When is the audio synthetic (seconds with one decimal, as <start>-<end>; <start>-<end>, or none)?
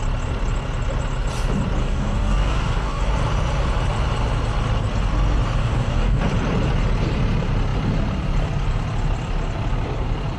1.8-3.0; 5.6-6.2